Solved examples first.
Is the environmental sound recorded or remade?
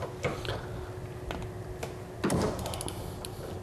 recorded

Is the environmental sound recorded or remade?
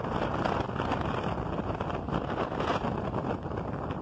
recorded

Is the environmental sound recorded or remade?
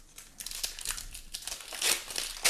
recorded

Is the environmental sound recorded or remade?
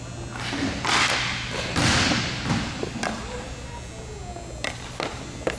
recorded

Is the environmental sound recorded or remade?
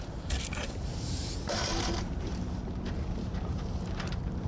remade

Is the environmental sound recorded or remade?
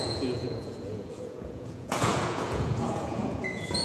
remade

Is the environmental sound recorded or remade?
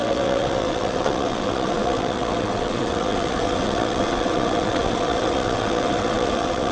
remade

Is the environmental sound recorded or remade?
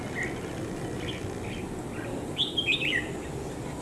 recorded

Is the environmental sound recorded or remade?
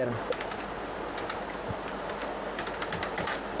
recorded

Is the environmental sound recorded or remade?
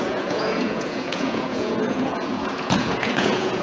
remade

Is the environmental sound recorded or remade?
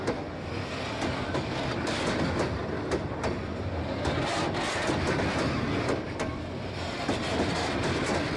recorded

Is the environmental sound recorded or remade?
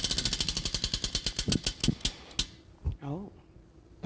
recorded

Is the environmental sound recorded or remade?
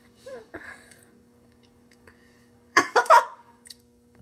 remade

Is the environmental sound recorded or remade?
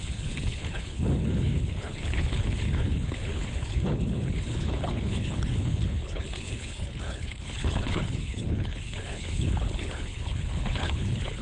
remade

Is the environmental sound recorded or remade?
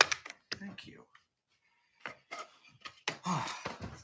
recorded